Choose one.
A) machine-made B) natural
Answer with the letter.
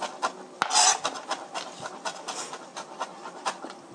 B